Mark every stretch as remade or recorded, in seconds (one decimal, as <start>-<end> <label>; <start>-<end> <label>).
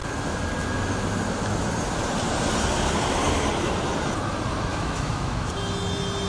0.0-4.7 recorded; 4.7-5.5 remade; 5.5-6.3 recorded